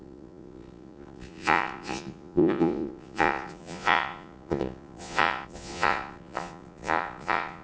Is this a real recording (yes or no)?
no